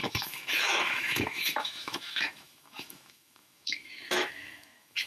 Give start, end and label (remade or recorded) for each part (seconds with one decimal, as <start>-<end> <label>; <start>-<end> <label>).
0.0-5.1 remade